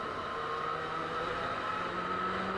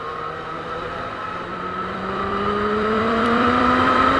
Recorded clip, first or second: first